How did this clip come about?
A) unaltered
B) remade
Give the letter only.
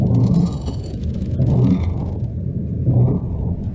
B